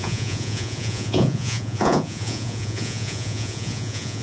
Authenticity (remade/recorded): remade